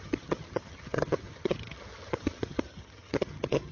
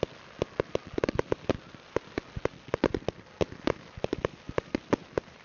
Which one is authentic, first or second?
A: second